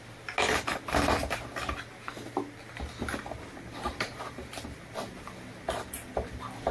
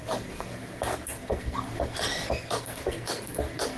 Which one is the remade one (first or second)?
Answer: second